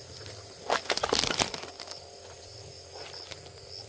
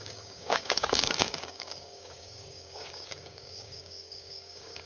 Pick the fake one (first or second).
second